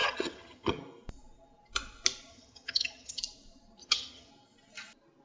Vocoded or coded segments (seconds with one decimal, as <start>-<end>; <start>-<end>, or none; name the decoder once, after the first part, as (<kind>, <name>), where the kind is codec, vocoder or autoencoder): 0.0-0.8 (vocoder, HiFi-GAN); 2.3-3.2; 3.8-4.3